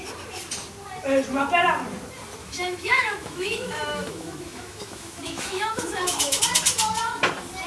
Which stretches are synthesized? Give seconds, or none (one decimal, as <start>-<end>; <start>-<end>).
2.4-6.4